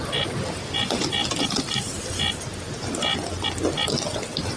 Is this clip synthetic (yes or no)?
no